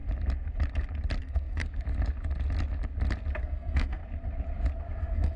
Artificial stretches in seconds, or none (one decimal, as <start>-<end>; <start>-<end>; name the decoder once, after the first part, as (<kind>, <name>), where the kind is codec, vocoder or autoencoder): 1.2-1.6 (codec, SNAC); 3.4-4.0; 5.0-5.4